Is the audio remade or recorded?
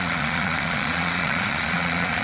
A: remade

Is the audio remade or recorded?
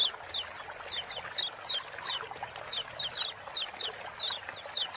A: recorded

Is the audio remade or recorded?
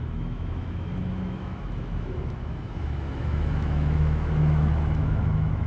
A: remade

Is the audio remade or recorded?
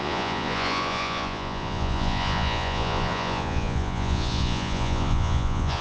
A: remade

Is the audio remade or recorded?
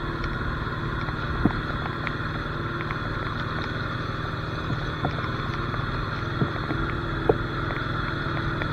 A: recorded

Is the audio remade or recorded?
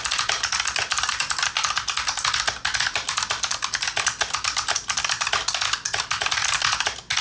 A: recorded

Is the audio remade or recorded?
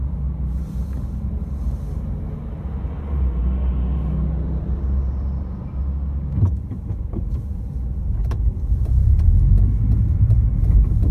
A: recorded